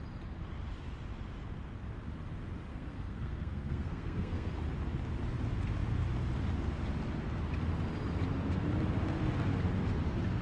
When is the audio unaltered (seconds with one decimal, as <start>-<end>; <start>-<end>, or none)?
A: 0.0-2.7; 4.5-10.4